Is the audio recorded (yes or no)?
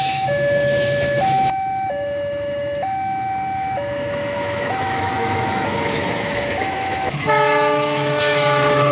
no